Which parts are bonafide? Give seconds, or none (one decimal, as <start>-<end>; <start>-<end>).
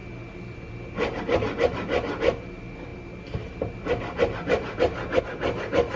0.0-6.0